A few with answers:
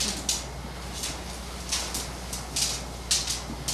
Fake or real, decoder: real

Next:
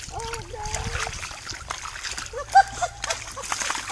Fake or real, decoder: real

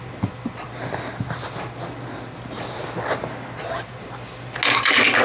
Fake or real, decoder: real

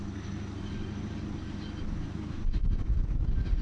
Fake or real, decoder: real